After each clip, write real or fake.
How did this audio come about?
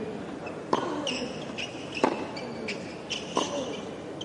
real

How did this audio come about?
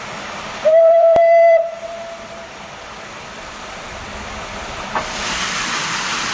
fake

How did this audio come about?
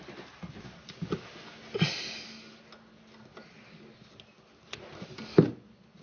real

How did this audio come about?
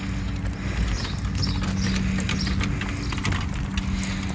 real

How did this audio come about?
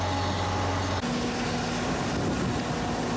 real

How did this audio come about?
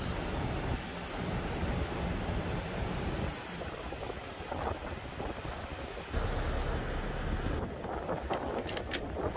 real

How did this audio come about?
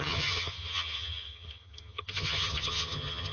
fake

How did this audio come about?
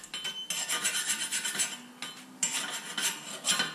real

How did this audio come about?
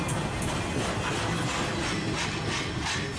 real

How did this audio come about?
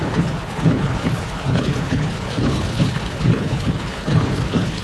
fake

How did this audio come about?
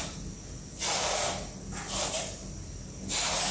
real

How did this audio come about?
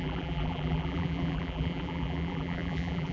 fake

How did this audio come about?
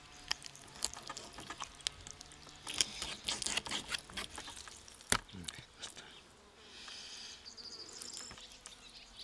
real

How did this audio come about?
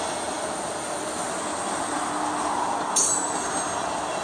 real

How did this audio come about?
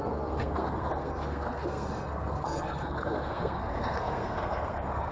fake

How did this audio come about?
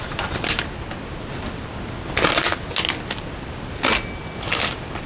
real